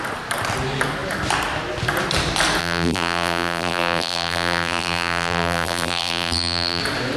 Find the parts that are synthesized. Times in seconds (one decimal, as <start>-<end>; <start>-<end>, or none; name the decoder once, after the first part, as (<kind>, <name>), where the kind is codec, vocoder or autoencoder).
2.6-6.8 (vocoder, BigVGAN v2)